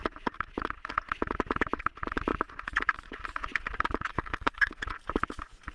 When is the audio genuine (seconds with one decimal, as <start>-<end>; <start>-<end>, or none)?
0.0-4.1; 4.7-5.7